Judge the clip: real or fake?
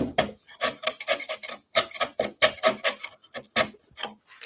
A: real